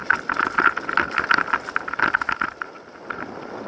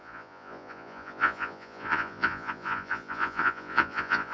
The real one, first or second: first